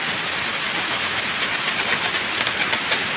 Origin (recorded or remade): recorded